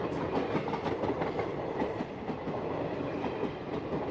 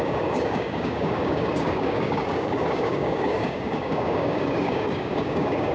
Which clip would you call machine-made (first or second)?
second